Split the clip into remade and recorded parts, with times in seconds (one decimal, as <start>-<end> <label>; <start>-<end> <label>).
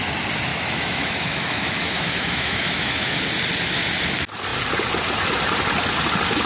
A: 0.0-0.5 recorded; 0.5-3.2 remade; 3.2-6.5 recorded